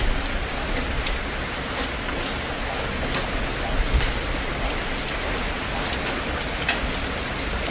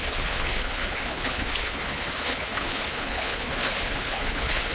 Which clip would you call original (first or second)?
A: first